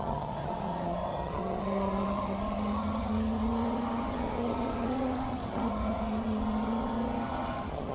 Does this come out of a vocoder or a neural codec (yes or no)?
yes